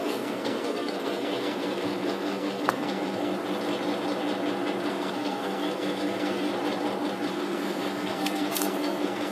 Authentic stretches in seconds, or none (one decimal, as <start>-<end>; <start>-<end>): 3.3-4.9; 6.5-7.3